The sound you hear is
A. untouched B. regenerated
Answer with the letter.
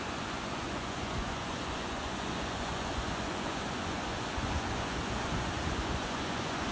B